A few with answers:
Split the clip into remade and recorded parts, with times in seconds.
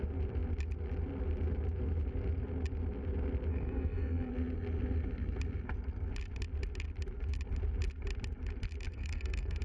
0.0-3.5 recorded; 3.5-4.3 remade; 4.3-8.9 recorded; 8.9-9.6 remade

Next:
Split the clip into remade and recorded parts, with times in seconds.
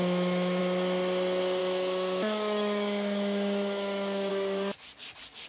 0.0-0.6 remade; 0.6-1.6 recorded; 1.6-4.3 remade; 4.3-5.5 recorded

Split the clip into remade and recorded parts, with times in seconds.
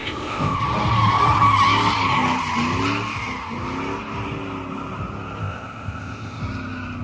0.0-0.6 remade; 0.6-5.4 recorded; 5.4-6.4 remade; 6.4-7.0 recorded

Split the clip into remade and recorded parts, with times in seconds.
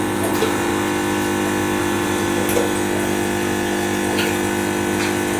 0.0-0.7 remade; 0.7-1.8 recorded; 1.8-2.4 remade; 2.4-5.4 recorded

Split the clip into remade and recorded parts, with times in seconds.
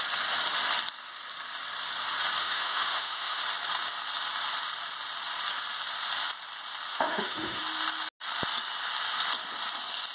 0.0-2.4 recorded; 2.4-3.4 remade; 3.4-6.9 recorded; 6.9-7.6 remade; 7.6-10.1 recorded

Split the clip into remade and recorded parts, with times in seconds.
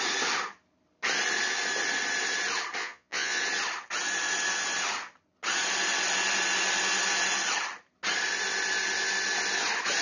0.0-2.8 recorded; 2.8-3.4 remade; 3.4-10.0 recorded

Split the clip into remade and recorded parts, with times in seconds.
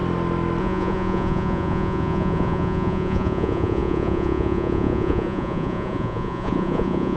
0.0-0.6 recorded; 0.6-7.2 remade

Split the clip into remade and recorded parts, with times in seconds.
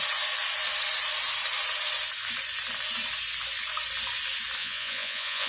0.0-4.6 recorded; 4.6-5.5 remade